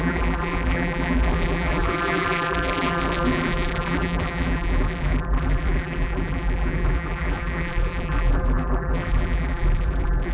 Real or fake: fake